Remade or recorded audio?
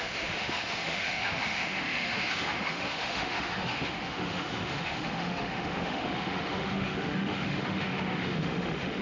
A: remade